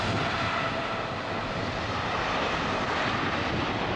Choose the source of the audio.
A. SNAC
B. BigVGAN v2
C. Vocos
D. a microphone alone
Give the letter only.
D